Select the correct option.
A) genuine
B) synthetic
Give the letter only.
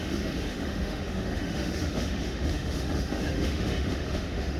B